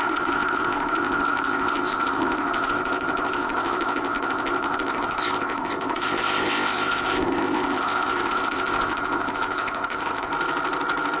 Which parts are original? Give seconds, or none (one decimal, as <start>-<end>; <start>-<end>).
10.3-11.2